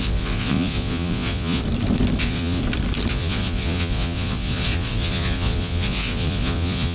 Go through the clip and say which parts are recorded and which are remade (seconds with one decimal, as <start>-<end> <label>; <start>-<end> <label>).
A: 0.0-1.6 remade; 1.6-2.2 recorded; 2.2-2.6 remade; 2.6-3.1 recorded; 3.1-6.9 remade

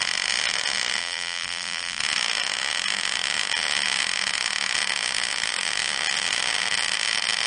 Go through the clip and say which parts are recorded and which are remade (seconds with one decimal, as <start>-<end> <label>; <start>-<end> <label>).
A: 0.0-1.0 recorded; 1.0-2.0 remade; 2.0-7.5 recorded